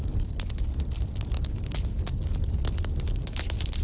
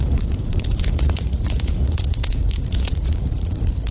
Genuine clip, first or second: first